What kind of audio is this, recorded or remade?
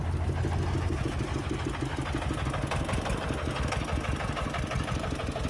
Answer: recorded